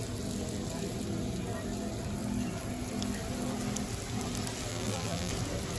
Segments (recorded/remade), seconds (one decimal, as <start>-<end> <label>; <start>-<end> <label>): 0.0-4.7 recorded; 4.7-5.3 remade; 5.3-5.8 recorded